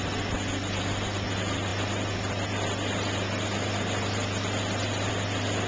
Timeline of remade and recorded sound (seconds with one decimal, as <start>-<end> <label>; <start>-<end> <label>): 0.0-5.7 recorded